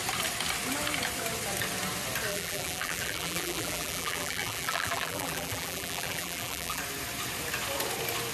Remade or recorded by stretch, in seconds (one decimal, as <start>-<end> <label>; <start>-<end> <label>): 0.0-2.3 recorded; 2.3-6.8 remade; 6.8-8.3 recorded